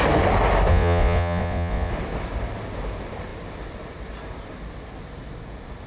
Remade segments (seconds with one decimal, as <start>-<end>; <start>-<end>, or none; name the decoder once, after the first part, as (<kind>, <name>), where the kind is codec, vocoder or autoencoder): 0.7-1.9 (vocoder, Vocos)